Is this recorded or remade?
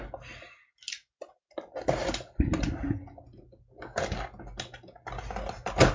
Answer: recorded